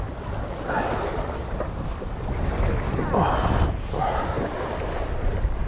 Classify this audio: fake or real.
real